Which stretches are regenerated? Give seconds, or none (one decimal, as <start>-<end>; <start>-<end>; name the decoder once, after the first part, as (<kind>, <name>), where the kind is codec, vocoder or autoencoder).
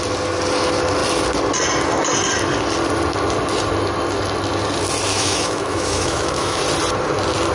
5.1-6.6 (autoencoder, DAC-VAE)